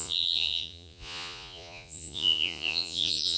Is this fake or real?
fake